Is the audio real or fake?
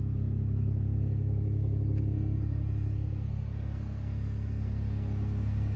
fake